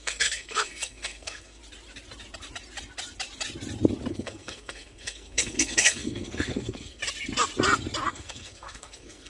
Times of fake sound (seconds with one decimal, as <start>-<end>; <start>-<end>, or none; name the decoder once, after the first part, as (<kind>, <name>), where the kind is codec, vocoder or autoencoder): 0.0-1.6 (codec, SNAC); 4.1-7.0; 8.1-9.3